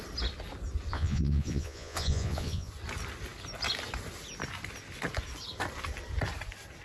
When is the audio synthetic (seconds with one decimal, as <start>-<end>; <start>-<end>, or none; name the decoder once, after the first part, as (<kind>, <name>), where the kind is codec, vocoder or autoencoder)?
0.9-2.7 (vocoder, Vocos)